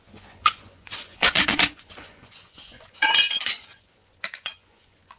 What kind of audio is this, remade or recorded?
remade